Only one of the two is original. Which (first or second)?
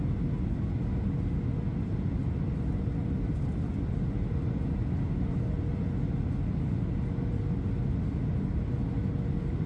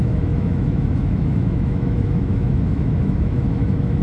first